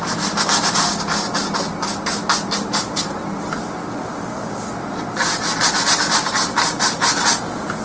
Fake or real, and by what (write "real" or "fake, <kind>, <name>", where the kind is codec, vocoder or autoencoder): real